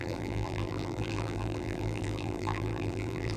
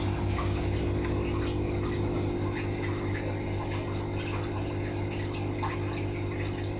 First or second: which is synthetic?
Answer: first